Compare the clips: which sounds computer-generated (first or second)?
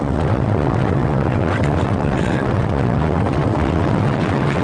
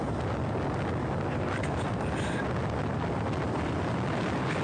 first